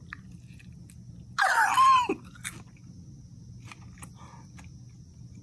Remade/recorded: recorded